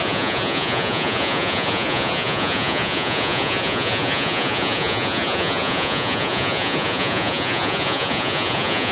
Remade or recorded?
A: remade